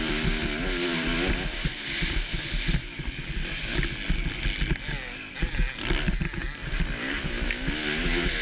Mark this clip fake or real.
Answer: real